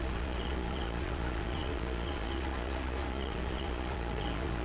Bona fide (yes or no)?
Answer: no